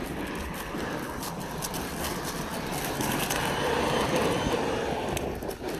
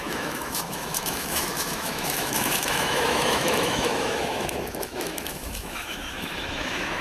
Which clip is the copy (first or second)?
second